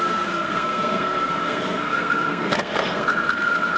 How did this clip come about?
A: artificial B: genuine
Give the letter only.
A